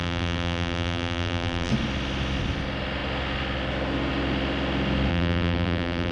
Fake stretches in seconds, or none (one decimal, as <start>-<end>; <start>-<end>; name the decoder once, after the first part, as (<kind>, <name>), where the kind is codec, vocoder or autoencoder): 0.0-1.7 (vocoder, BigVGAN v2); 5.1-6.1